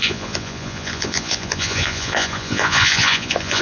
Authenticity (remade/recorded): remade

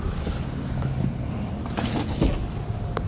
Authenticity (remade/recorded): recorded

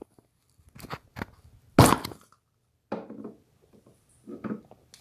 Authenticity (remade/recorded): recorded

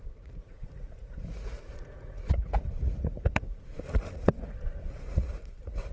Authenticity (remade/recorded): remade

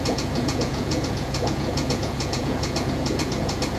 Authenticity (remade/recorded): remade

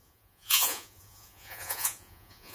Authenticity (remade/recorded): remade